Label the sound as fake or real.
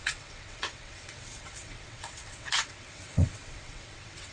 fake